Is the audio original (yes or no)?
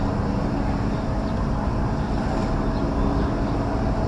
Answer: yes